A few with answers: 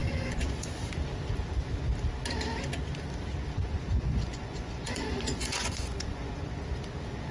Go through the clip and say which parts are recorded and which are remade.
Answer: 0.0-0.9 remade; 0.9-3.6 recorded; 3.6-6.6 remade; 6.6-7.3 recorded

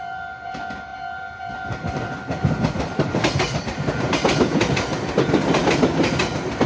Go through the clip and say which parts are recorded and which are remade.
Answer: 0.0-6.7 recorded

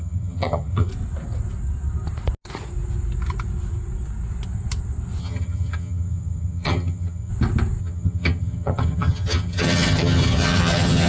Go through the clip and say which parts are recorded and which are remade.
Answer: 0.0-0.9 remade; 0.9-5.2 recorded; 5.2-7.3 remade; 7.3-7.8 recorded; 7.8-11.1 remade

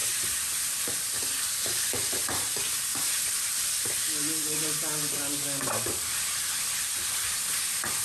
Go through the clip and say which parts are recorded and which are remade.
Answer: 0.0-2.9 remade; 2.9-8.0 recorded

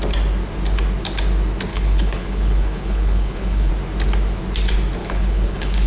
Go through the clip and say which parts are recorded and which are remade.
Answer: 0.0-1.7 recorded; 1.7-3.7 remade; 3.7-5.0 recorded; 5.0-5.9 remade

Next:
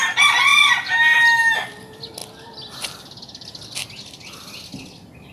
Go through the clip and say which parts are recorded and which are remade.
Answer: 0.0-5.3 recorded

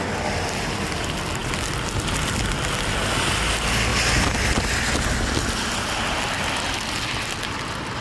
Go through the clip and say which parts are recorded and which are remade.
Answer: 0.0-8.0 recorded

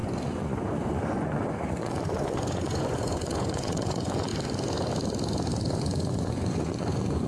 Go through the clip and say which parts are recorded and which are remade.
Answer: 0.0-4.3 remade; 4.3-5.8 recorded; 5.8-7.3 remade